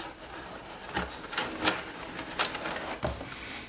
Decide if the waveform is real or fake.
real